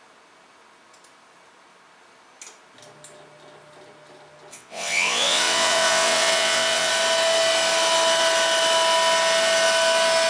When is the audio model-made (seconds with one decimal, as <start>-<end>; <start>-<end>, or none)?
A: 4.5-6.9